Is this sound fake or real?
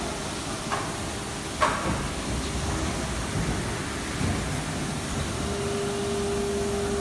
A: real